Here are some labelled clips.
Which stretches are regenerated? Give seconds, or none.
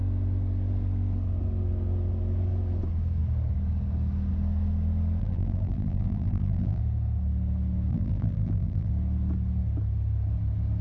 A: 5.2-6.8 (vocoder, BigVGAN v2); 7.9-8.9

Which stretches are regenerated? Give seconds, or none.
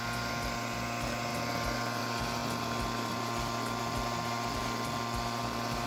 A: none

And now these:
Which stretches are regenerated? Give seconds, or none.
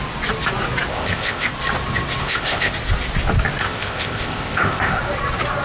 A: 0.9-1.5 (codec, ZipCodec); 2.2-2.7; 3.6-5.0